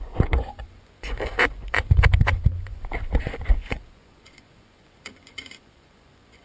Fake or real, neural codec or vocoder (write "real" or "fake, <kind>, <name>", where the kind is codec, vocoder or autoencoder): fake, vocoder, Vocos